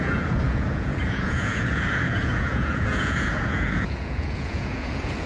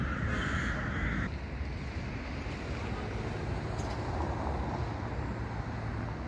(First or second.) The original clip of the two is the second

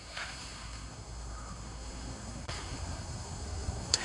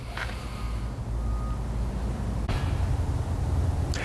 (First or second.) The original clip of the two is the second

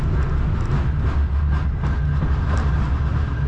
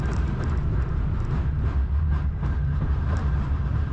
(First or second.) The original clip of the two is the first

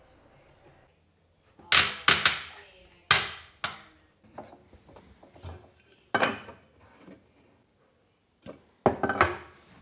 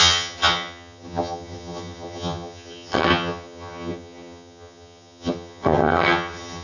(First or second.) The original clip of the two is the first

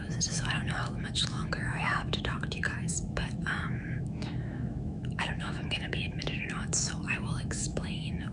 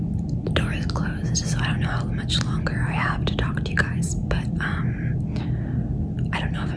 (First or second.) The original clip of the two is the second